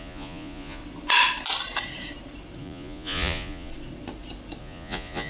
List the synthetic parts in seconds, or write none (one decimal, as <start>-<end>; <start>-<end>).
0.0-0.8; 2.6-3.7; 4.6-5.3